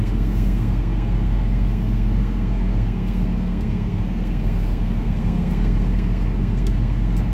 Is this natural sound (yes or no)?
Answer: no